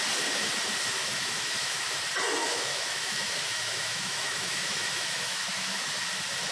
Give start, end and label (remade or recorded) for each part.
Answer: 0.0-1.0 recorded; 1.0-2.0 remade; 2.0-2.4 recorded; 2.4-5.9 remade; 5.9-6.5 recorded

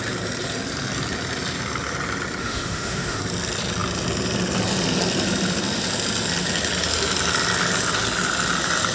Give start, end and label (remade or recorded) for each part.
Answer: 0.0-2.4 recorded; 2.4-3.2 remade; 3.2-8.9 recorded

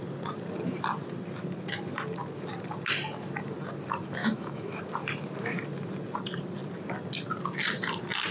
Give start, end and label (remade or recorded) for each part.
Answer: 0.0-4.2 recorded; 4.2-4.8 remade; 4.8-8.3 recorded

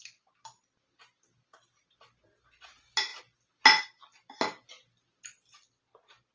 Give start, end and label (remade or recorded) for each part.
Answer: 0.0-6.3 recorded